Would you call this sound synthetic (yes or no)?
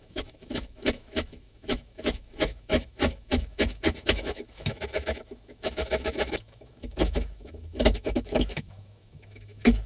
yes